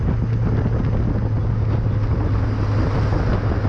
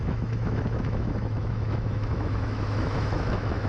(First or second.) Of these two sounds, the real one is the first